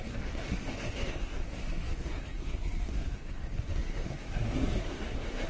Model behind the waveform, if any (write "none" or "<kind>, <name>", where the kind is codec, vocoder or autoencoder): codec, SNAC